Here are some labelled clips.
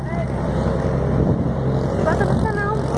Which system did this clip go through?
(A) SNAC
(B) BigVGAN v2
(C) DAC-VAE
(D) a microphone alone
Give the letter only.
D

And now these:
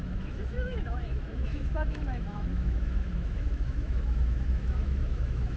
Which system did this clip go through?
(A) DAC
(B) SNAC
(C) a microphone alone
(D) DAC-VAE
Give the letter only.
D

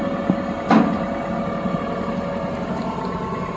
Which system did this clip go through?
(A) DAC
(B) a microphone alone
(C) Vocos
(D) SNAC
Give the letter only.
B